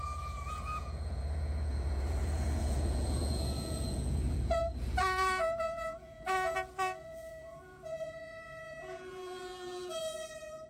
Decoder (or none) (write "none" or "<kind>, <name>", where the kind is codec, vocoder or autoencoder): vocoder, Vocos